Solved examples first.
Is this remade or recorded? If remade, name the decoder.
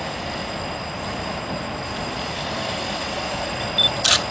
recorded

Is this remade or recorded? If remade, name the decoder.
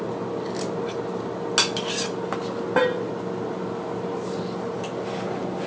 recorded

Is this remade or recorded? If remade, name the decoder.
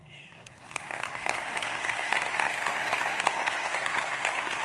remade, codec, SNAC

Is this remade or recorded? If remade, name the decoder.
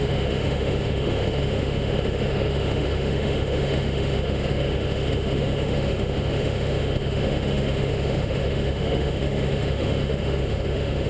remade, autoencoder, DAC-VAE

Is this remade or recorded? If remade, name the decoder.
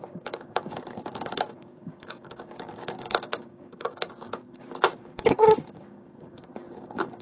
remade, codec, DAC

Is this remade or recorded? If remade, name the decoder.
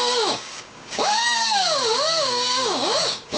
remade, codec, DAC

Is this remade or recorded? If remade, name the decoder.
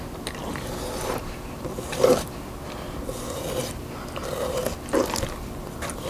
recorded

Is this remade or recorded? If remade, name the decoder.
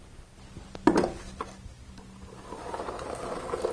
recorded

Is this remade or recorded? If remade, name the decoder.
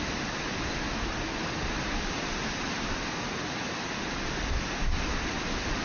recorded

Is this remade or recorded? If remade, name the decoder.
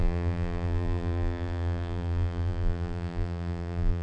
remade, vocoder, BigVGAN v2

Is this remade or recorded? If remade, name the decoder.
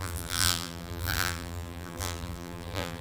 remade, vocoder, BigVGAN v2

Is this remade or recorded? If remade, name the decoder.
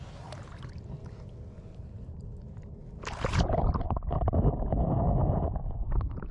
recorded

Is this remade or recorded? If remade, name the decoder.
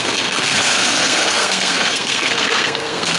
remade, codec, SNAC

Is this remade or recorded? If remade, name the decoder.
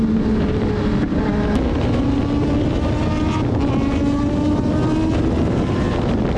recorded